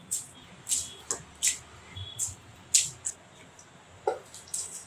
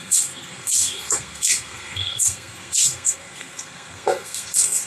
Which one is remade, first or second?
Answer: second